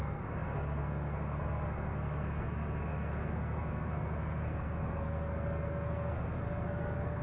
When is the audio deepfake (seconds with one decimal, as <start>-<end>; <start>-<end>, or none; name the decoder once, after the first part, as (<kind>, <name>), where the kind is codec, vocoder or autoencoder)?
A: 0.0-7.2 (codec, SNAC)